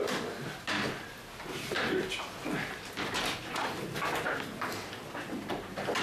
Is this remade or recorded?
recorded